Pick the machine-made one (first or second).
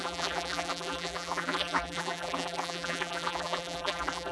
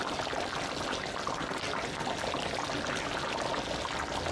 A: first